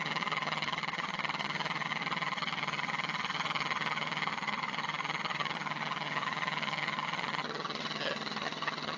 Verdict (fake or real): fake